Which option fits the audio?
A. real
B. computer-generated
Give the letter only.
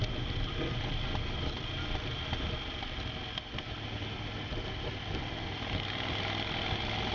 A